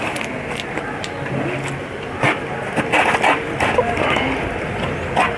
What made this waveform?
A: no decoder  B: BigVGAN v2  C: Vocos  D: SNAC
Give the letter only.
A